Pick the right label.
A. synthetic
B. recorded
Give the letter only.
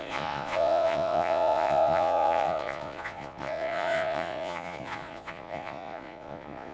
A